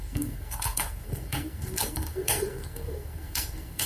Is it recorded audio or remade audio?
remade